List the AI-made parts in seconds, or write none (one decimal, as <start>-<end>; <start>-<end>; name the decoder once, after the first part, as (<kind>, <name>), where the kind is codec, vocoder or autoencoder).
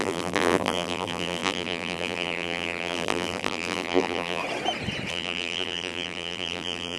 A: 0.0-4.4 (vocoder, BigVGAN v2); 5.1-7.0